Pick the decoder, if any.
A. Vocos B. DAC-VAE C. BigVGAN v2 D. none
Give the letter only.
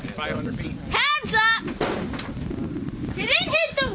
D